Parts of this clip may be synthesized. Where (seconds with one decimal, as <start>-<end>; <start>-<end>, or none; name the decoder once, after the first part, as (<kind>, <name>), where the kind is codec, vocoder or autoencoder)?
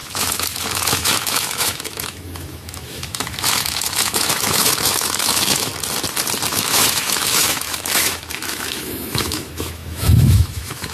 0.0-5.7 (autoencoder, DAC-VAE); 6.5-10.9